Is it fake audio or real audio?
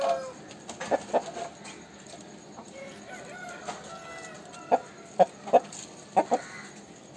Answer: real